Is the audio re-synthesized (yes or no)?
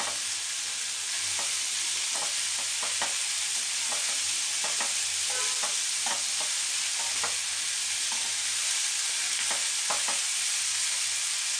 no